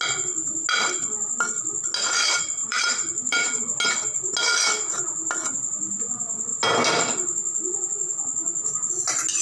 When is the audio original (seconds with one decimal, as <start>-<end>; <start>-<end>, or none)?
0.0-2.6; 3.6-9.4